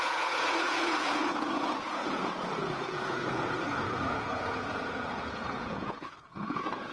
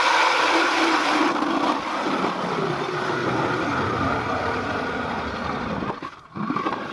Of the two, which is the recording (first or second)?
second